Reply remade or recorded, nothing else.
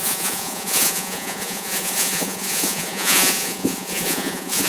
remade